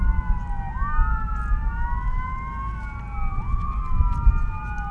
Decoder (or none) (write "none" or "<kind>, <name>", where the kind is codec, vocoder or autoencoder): none